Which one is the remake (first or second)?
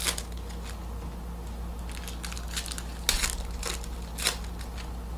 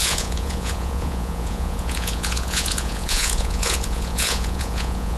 second